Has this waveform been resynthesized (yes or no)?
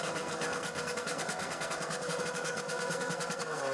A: yes